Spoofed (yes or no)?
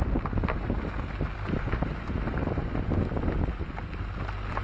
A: no